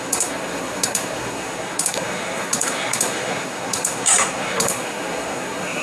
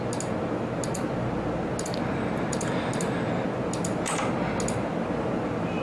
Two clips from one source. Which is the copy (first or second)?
first